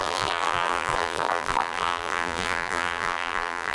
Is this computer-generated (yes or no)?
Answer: yes